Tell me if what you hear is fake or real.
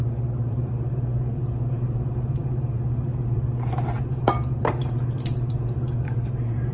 fake